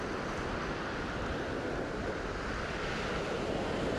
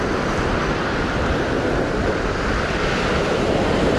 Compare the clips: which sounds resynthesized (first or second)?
second